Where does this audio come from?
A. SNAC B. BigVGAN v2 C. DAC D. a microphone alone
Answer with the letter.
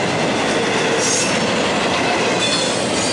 D